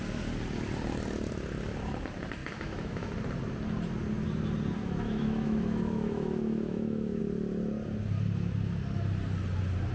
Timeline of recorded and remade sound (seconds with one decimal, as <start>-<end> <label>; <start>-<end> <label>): 0.0-2.4 recorded; 2.4-3.1 remade; 3.1-4.8 recorded; 4.8-7.2 remade; 7.2-9.9 recorded